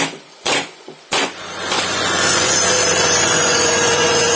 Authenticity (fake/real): fake